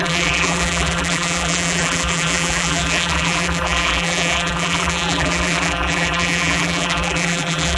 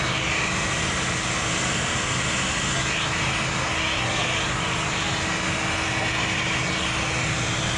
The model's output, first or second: first